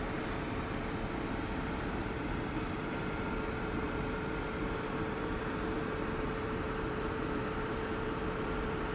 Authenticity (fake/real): fake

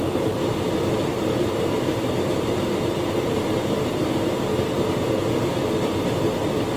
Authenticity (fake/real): real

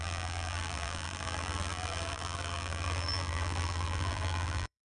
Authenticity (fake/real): fake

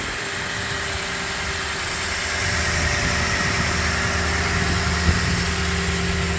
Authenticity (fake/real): real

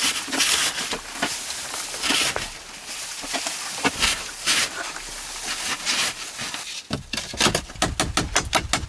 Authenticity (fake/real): real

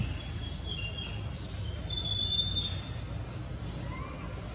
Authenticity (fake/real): real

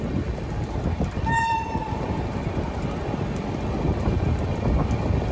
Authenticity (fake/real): fake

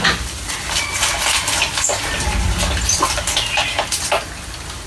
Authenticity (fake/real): real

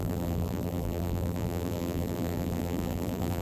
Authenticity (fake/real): fake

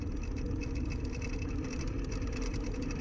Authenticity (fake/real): real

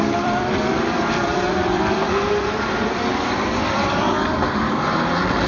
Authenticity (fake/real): fake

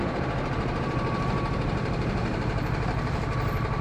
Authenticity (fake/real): fake